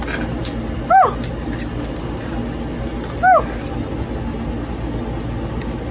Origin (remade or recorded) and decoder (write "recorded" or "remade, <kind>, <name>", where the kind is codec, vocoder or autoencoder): recorded